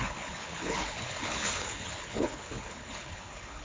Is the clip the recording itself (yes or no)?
no